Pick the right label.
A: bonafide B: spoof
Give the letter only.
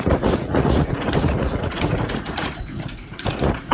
B